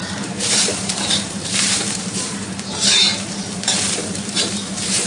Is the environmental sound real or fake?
fake